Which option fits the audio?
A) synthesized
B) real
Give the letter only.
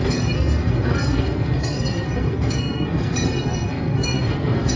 A